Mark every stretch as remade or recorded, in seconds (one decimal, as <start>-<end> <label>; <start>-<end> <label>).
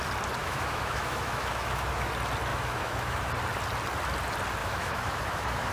0.0-0.4 recorded; 0.4-2.1 remade; 2.1-2.5 recorded; 2.5-3.3 remade; 3.3-4.6 recorded; 4.6-5.7 remade